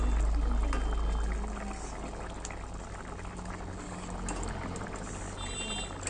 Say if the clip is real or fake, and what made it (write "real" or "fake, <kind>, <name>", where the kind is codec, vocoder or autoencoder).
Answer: real